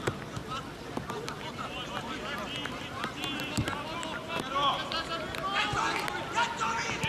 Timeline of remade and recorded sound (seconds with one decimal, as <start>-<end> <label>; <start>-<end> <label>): 0.0-7.1 recorded